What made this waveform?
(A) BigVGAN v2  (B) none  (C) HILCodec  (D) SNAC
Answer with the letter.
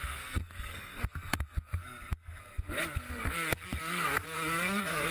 D